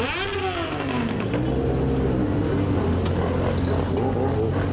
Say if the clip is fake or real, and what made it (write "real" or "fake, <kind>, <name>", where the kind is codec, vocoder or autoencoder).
real